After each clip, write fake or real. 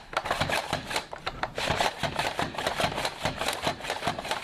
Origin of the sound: fake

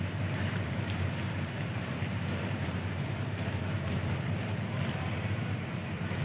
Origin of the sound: fake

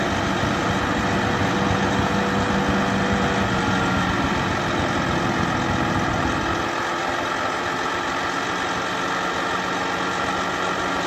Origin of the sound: real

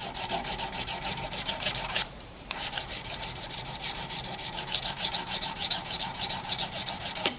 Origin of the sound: fake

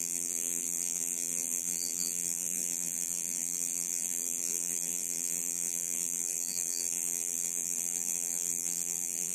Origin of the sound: fake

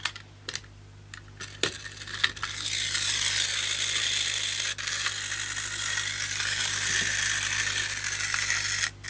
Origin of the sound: real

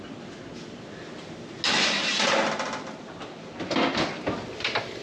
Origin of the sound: real